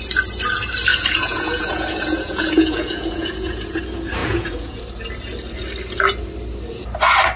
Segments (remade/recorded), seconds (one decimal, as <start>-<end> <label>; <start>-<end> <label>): 0.0-0.9 recorded; 0.9-3.8 remade; 3.8-4.2 recorded; 4.2-4.8 remade; 4.8-7.4 recorded